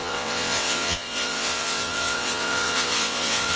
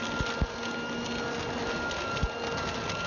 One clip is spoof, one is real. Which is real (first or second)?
second